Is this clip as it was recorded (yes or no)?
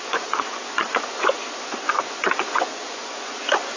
no